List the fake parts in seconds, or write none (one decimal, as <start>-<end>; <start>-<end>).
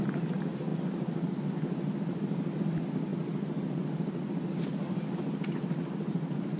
none